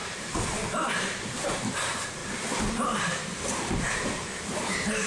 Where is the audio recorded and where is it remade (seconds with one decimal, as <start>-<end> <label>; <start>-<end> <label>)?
0.0-2.2 remade; 2.2-2.7 recorded; 2.7-5.1 remade